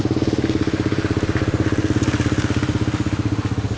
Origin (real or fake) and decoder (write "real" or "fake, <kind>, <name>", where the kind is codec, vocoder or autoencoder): real